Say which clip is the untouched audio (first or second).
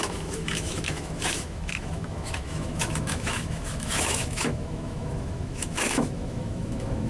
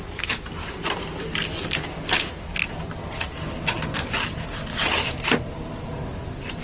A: second